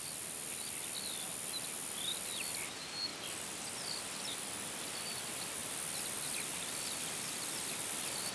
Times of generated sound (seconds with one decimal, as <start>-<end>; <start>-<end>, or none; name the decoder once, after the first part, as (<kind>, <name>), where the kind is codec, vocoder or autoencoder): none